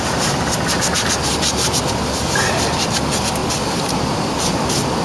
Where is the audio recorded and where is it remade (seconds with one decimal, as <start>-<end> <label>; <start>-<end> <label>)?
0.0-3.4 recorded; 3.4-4.3 remade; 4.3-5.0 recorded